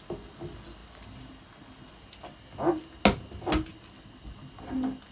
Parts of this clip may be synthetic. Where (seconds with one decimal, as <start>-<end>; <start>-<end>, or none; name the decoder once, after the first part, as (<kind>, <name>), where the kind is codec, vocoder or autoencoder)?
none